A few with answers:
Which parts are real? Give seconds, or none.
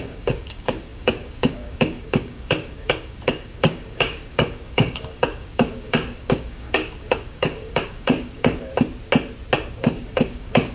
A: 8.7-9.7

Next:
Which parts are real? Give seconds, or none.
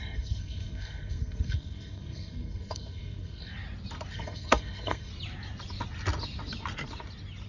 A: 3.5-4.1; 5.1-7.5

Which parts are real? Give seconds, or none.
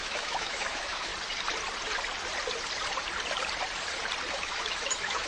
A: 1.1-4.3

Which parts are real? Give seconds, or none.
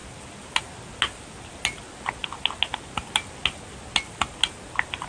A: 0.0-5.1